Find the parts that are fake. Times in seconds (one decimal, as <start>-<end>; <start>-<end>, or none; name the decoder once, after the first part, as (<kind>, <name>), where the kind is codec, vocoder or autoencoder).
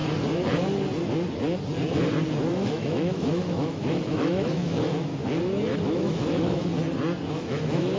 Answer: 2.5-5.1 (autoencoder, DAC-VAE); 5.8-6.7; 7.3-8.0